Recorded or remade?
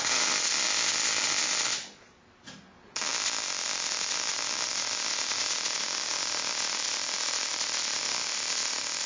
recorded